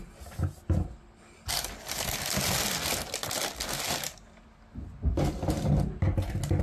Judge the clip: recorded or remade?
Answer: recorded